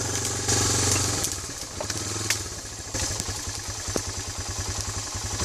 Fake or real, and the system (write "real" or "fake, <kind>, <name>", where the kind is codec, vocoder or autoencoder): real